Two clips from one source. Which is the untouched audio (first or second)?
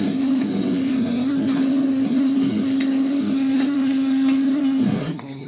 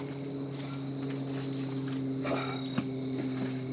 second